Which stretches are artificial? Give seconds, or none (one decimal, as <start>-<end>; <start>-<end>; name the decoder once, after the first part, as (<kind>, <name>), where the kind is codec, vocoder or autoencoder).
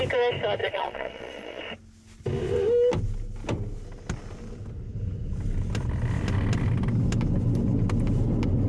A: 0.6-1.6 (vocoder, Vocos)